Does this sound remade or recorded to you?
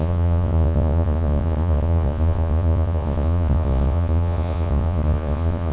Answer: remade